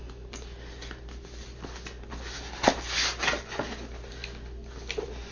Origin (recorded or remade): recorded